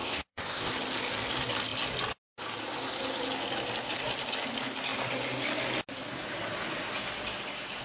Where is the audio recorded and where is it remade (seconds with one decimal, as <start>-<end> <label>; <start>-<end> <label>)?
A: 0.0-0.7 remade; 0.7-7.8 recorded